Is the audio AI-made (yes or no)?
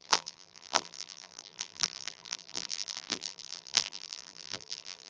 yes